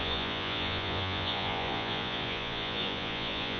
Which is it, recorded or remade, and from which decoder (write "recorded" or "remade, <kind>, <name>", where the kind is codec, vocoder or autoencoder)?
remade, vocoder, Vocos